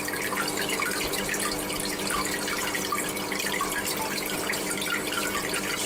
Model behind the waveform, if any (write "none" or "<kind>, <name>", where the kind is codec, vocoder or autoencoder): none